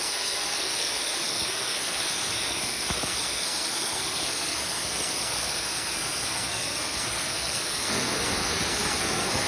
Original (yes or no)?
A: no